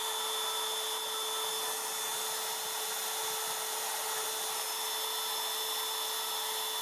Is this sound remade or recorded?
recorded